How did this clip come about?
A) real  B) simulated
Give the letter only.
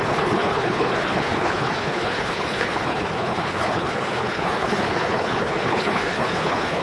B